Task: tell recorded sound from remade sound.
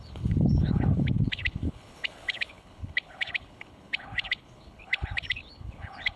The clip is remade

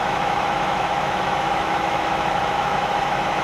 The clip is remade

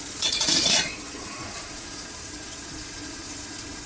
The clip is remade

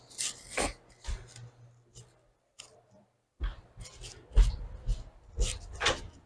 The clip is recorded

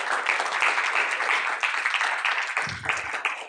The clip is recorded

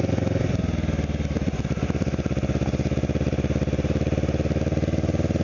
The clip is recorded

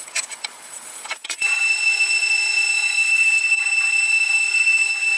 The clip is remade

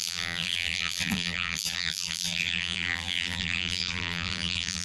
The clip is remade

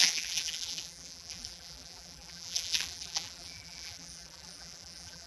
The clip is remade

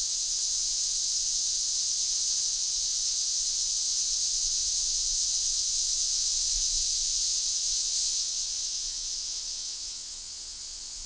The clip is remade